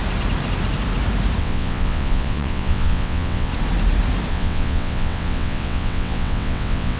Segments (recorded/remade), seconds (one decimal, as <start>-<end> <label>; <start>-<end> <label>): 0.0-1.4 recorded; 1.4-3.5 remade; 3.5-4.3 recorded; 4.3-7.0 remade